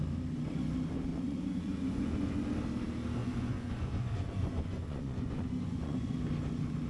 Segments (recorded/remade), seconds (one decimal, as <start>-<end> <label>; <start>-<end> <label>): 0.0-1.1 recorded; 1.1-2.4 remade; 2.4-3.2 recorded; 3.2-6.2 remade; 6.2-6.9 recorded